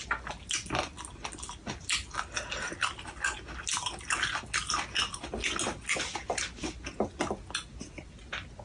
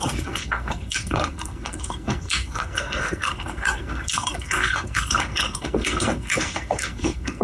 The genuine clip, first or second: first